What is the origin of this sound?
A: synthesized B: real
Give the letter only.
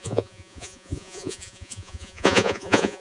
A